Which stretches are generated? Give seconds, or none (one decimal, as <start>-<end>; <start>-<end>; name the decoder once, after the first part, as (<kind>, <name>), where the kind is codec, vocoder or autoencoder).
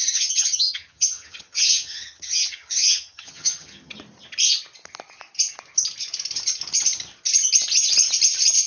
0.0-3.9 (vocoder, HiFi-GAN)